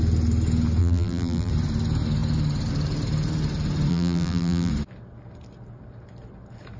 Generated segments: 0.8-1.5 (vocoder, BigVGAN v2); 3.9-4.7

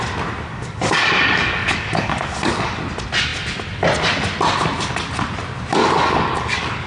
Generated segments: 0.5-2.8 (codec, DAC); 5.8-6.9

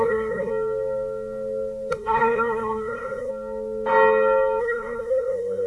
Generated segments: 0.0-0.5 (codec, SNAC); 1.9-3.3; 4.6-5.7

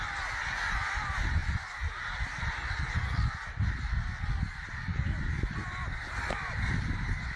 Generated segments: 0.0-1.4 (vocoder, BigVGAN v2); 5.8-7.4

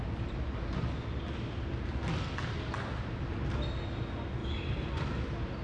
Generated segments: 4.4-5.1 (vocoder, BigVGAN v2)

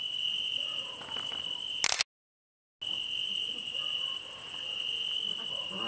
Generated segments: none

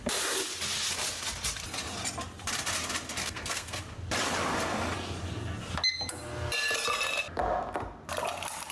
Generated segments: 3.2-3.8 (codec, SNAC)